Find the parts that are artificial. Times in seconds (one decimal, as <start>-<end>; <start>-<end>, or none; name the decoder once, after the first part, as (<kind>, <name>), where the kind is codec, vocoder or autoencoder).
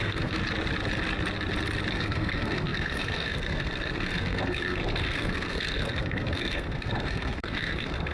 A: 0.0-0.4 (codec, SNAC); 1.9-8.1